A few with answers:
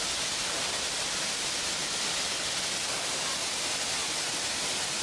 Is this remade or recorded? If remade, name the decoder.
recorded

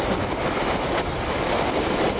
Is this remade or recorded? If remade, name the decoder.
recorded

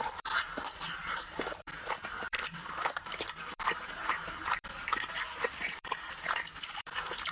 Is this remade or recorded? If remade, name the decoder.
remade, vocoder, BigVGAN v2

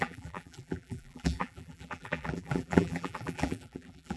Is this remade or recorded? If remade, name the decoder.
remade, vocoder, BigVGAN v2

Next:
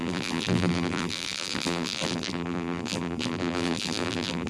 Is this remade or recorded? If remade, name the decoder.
remade, vocoder, BigVGAN v2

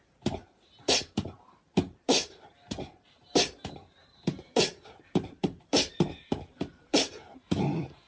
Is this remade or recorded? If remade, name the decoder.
remade, vocoder, BigVGAN v2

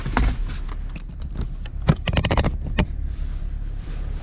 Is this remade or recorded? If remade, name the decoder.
remade, vocoder, BigVGAN v2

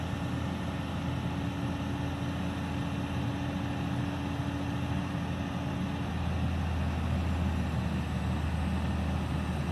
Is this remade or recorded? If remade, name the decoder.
recorded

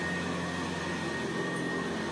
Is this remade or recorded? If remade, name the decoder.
recorded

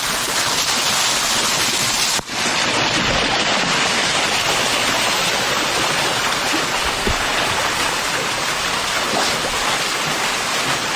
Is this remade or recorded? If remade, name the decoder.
recorded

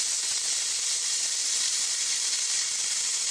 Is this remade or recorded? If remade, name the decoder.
recorded